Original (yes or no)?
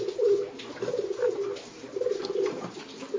yes